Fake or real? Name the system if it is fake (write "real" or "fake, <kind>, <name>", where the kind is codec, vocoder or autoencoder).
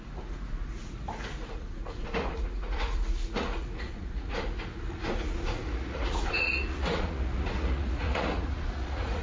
fake, vocoder, Vocos